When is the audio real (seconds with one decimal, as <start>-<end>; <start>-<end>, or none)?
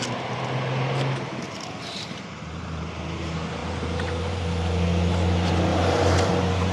0.0-3.6; 4.4-5.7; 6.3-6.7